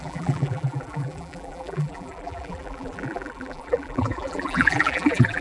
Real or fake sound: fake